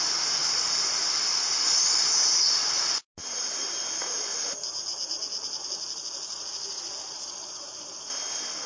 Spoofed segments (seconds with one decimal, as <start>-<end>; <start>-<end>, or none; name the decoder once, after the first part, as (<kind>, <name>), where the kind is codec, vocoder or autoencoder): none